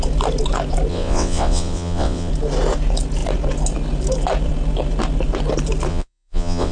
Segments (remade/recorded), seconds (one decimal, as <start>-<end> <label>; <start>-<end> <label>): 0.0-0.9 recorded; 0.9-2.3 remade; 2.3-5.9 recorded; 5.9-6.7 remade